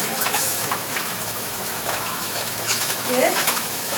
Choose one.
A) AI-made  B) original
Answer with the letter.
A